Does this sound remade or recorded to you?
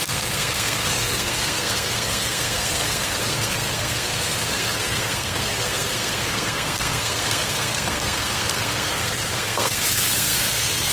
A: remade